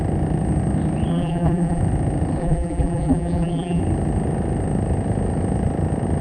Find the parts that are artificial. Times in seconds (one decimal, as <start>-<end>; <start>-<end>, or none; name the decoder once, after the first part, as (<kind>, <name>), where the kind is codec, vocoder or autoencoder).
1.1-1.8 (vocoder, BigVGAN v2); 2.4-3.8